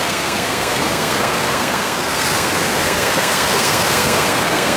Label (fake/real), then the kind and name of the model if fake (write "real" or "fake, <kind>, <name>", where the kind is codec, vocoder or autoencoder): fake, codec, SNAC